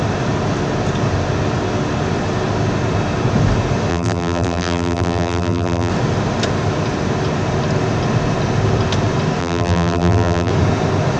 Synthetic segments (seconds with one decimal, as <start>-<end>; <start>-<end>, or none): 3.9-5.9; 9.4-10.5